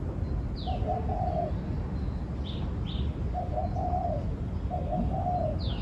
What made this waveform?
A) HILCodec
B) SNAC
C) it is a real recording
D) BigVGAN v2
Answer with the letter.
C